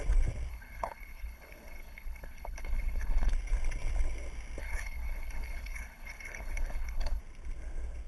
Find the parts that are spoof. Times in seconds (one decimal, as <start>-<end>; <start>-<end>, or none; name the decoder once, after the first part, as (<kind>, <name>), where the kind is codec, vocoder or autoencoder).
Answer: 0.5-3.3 (codec, HILCodec); 4.6-7.2